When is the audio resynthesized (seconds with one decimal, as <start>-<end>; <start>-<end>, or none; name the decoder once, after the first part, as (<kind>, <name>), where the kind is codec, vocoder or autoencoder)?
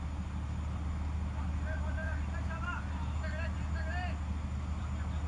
none